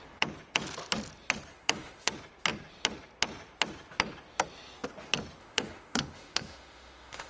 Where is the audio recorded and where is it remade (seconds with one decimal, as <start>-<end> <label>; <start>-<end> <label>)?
0.0-1.5 recorded; 1.5-2.1 remade; 2.1-5.4 recorded; 5.4-7.3 remade